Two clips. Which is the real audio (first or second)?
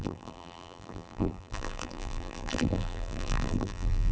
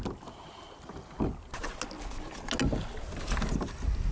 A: second